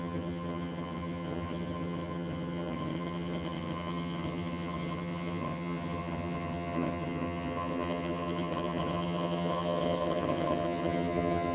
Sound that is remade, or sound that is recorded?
remade